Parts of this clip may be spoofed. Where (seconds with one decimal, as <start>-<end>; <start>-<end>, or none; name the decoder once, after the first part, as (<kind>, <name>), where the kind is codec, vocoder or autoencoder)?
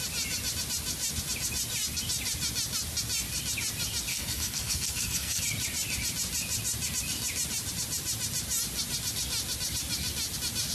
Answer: 4.1-5.4 (codec, SNAC)